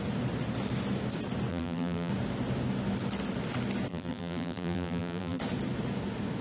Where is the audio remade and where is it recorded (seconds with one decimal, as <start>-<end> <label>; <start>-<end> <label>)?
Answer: 0.0-1.5 recorded; 1.5-2.1 remade; 2.1-3.9 recorded; 3.9-5.4 remade; 5.4-6.4 recorded